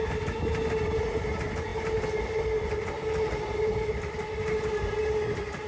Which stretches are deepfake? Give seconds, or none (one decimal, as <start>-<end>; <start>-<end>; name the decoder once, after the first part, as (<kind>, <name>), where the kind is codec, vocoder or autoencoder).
none

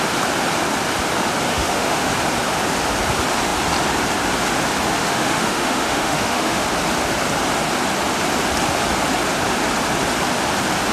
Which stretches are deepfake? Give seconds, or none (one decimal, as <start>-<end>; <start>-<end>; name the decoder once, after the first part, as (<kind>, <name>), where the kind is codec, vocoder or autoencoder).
1.5-2.1 (autoencoder, DAC-VAE); 5.0-6.6

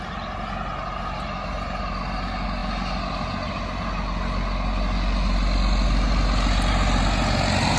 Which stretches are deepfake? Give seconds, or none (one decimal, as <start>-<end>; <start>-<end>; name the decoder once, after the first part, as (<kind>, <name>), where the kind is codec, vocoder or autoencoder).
none

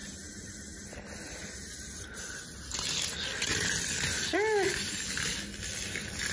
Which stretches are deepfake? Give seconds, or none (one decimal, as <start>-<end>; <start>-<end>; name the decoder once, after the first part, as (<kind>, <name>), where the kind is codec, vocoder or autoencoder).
none

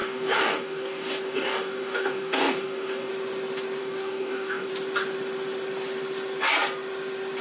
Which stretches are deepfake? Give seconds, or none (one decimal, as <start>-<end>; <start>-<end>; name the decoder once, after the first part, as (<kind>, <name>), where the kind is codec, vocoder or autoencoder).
0.0-3.1 (codec, DAC); 3.8-4.7

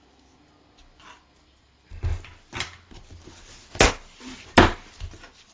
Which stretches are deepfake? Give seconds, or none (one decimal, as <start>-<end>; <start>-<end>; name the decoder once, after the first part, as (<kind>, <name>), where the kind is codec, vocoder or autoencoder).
none

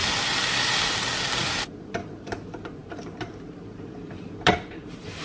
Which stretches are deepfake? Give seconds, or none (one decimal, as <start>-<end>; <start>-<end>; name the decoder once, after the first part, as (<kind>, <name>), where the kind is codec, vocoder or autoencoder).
1.2-5.2 (vocoder, BigVGAN v2)

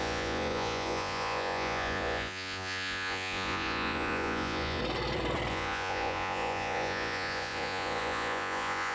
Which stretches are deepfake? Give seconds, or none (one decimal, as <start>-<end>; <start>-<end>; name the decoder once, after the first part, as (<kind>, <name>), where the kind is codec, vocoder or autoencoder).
0.0-4.8 (vocoder, Vocos); 5.5-8.9